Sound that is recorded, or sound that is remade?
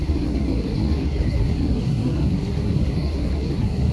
remade